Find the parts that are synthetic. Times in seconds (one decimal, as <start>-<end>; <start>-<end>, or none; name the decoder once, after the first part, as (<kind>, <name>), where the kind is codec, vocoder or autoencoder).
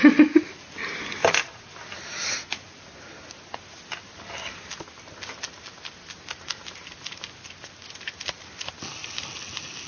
none